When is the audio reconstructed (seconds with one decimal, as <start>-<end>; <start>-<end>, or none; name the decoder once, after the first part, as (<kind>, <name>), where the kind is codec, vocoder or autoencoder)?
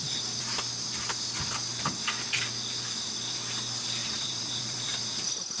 4.0-5.0 (vocoder, BigVGAN v2)